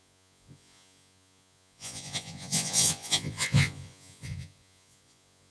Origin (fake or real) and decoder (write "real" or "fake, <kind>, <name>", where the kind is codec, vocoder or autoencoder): fake, vocoder, Vocos